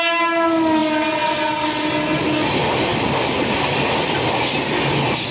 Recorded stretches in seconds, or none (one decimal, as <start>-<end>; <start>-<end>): 0.0-5.3